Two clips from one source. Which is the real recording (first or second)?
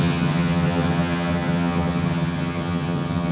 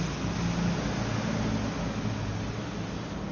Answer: second